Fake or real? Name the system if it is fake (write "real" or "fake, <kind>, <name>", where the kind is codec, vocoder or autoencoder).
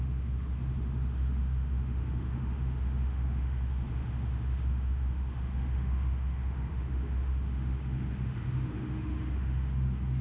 fake, autoencoder, DAC-VAE